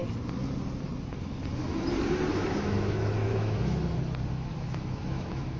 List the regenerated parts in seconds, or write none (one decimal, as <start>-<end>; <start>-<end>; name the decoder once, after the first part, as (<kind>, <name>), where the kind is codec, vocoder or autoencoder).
2.3-3.8 (autoencoder, DAC-VAE); 4.3-5.6